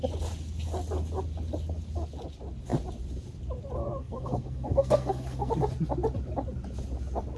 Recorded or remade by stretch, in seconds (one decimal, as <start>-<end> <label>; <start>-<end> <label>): 0.0-4.0 recorded; 4.0-5.5 remade; 5.5-7.4 recorded